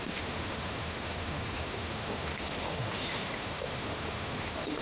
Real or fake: fake